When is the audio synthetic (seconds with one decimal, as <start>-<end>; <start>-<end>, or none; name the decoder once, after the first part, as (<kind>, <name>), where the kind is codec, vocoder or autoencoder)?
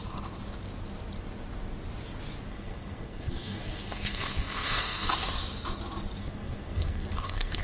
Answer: 2.5-5.1 (codec, SNAC); 6.2-7.6